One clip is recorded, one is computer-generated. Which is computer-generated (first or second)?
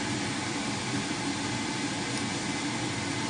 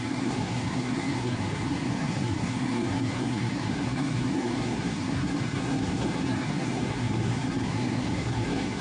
second